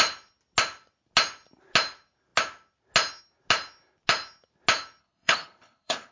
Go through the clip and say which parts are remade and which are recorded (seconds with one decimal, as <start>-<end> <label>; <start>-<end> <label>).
0.0-5.0 recorded; 5.0-6.1 remade